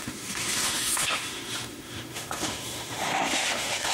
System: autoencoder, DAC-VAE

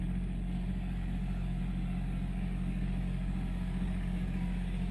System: codec, DAC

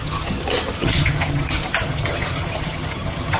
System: vocoder, HiFi-GAN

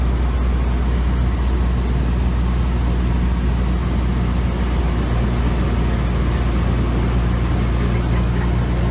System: none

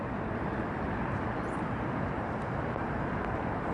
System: vocoder, BigVGAN v2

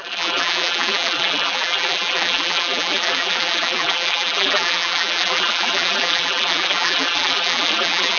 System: vocoder, BigVGAN v2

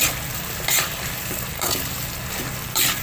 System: none